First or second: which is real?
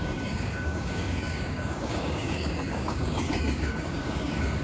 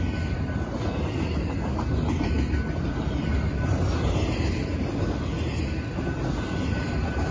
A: second